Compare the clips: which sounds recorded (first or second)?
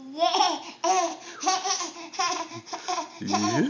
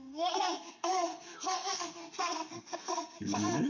first